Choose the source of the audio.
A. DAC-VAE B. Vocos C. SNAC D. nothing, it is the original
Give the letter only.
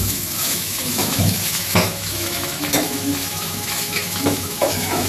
A